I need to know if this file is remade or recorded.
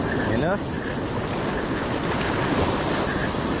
recorded